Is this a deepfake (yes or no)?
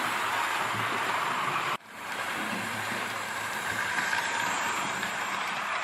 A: yes